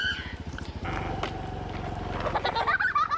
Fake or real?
real